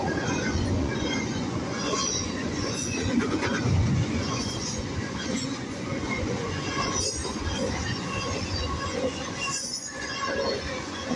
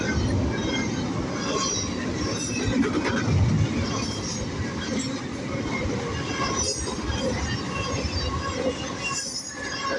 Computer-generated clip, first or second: first